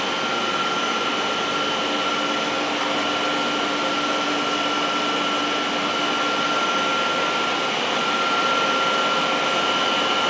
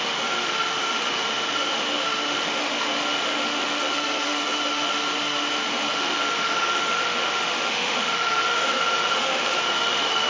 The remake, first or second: second